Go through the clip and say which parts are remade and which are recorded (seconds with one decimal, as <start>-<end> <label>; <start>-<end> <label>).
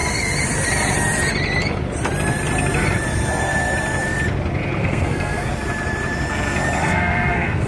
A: 0.0-4.8 recorded; 4.8-5.5 remade; 5.5-6.8 recorded; 6.8-7.7 remade